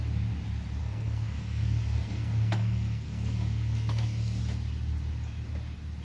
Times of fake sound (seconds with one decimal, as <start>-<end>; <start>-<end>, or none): 0.8-4.4